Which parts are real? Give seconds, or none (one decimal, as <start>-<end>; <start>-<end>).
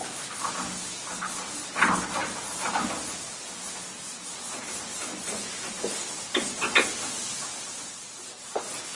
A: 0.0-5.1; 5.7-8.9